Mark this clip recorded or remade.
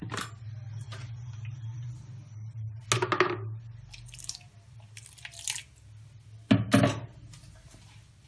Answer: recorded